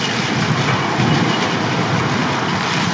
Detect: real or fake real